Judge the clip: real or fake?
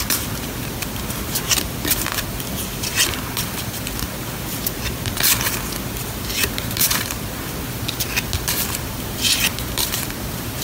fake